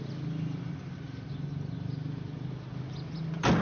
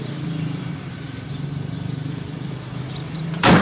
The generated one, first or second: second